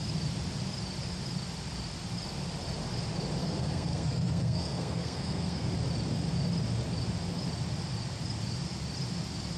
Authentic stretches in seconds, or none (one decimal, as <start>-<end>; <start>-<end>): 0.0-3.4; 5.7-9.6